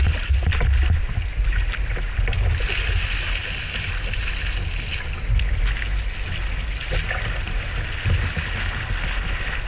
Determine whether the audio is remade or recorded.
recorded